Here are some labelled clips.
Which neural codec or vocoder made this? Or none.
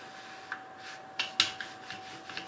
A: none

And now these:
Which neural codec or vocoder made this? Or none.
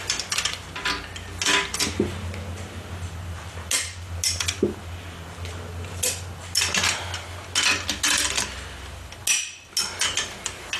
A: none